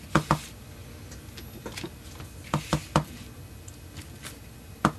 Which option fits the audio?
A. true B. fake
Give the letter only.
A